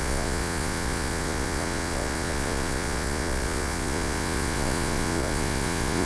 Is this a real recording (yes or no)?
no